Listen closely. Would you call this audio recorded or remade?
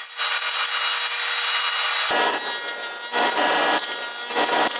recorded